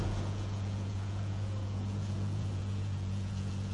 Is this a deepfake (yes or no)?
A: yes